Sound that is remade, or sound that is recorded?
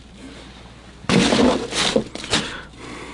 recorded